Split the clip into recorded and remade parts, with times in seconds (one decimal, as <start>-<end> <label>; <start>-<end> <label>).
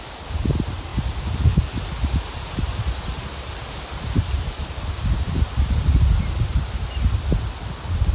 0.0-0.9 recorded; 0.9-1.6 remade; 1.6-8.1 recorded